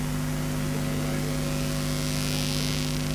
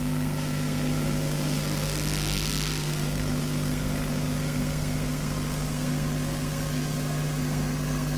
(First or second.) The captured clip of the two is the first